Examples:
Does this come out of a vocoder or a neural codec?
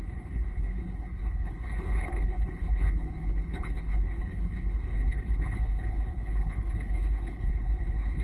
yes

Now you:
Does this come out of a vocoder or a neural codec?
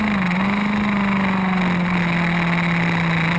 no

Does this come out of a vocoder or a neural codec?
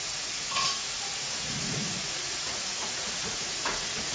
yes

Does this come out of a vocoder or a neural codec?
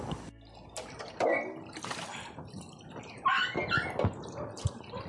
no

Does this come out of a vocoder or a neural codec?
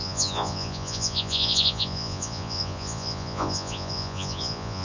yes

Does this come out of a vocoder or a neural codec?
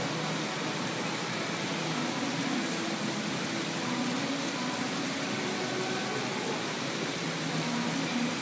no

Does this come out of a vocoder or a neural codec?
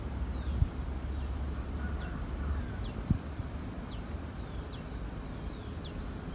no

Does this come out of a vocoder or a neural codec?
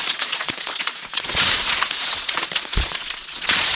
yes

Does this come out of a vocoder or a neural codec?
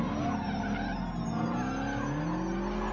no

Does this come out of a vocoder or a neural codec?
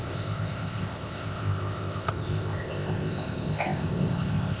yes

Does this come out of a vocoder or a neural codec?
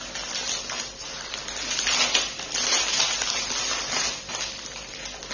no